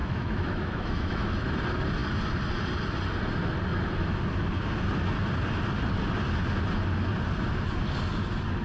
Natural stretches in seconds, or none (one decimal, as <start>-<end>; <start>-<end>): 1.5-8.6